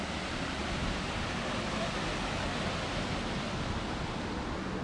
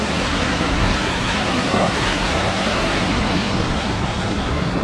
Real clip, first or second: first